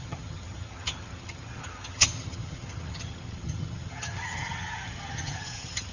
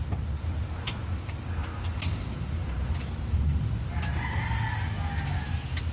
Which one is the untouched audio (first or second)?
second